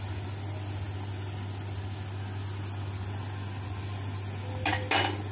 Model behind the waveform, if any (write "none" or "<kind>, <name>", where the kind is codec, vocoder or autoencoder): none